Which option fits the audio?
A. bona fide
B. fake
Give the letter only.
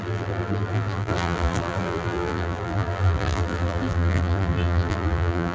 B